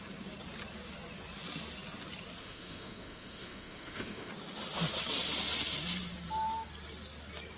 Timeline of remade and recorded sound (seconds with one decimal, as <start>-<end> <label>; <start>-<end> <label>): 0.0-2.4 recorded; 2.4-4.3 remade; 4.3-7.6 recorded